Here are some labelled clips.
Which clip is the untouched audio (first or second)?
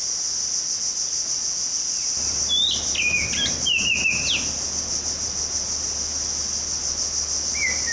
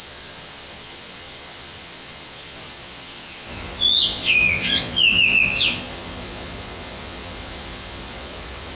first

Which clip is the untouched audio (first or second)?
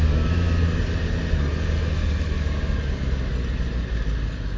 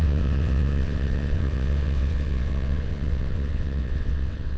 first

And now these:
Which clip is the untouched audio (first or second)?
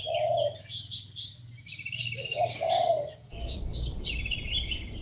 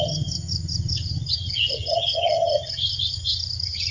first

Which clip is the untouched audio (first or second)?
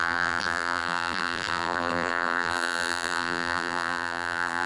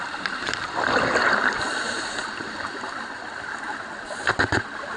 second